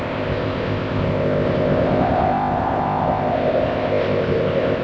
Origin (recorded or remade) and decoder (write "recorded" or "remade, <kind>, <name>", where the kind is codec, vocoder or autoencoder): remade, codec, ZipCodec